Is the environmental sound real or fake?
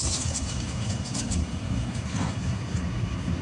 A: fake